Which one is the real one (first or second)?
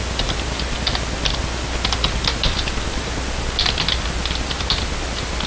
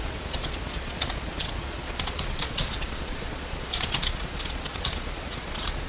first